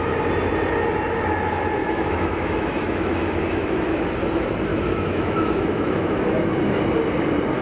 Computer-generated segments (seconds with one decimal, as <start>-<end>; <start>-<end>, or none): 1.8-4.0; 4.7-6.8